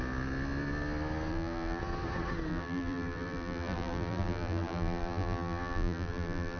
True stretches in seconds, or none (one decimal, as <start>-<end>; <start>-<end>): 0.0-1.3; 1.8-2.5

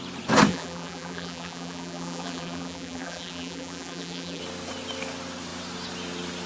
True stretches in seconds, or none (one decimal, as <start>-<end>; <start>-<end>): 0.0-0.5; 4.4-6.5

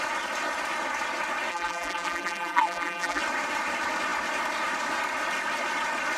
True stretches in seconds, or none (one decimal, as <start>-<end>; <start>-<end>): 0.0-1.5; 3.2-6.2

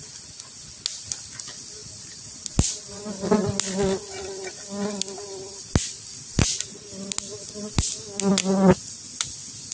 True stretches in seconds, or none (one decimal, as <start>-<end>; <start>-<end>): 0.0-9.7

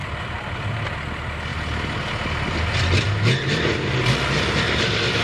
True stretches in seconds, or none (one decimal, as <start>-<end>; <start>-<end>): 0.7-5.2

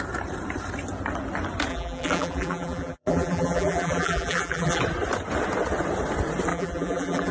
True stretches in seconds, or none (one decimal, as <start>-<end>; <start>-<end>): 0.0-1.7; 4.8-6.5

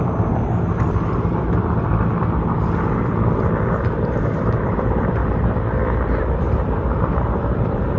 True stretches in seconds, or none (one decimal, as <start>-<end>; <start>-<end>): 2.1-3.7; 5.2-6.2

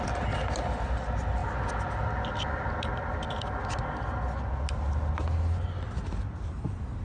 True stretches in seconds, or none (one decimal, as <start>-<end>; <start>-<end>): 0.0-7.0